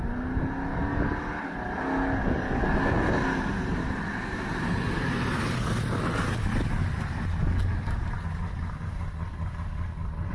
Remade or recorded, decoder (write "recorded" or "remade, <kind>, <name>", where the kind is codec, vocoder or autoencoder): recorded